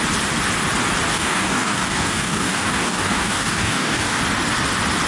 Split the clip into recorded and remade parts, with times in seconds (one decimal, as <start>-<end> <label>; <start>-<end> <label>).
0.0-1.1 recorded; 1.1-4.2 remade; 4.2-5.1 recorded